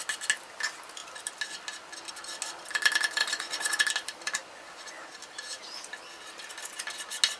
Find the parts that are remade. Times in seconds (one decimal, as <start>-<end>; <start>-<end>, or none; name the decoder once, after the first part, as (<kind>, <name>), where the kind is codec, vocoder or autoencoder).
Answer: 3.2-3.8 (vocoder, Vocos); 4.4-5.1